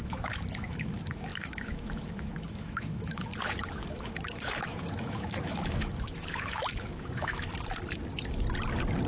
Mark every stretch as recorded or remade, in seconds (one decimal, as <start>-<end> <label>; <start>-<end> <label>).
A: 0.0-3.3 remade; 3.3-3.9 recorded; 3.9-7.5 remade; 7.5-9.1 recorded